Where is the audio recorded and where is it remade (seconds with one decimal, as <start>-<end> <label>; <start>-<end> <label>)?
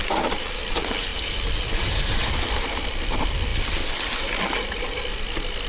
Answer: 0.0-5.7 recorded